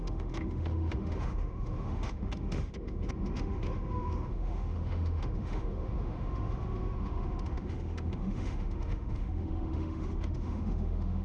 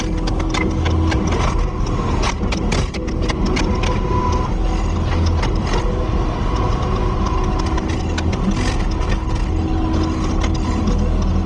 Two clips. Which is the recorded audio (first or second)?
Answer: second